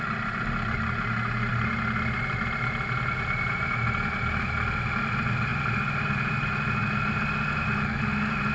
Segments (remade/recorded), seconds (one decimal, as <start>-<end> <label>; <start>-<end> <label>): 0.0-8.5 recorded